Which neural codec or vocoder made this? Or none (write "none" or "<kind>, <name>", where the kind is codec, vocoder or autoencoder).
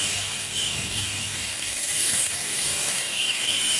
codec, DAC